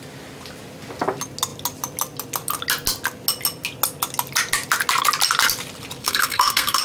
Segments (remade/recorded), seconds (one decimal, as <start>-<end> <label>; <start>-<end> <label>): 0.0-6.0 recorded; 6.0-6.8 remade